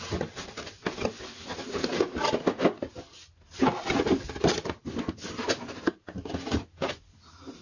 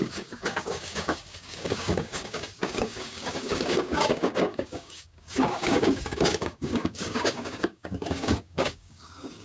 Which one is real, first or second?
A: first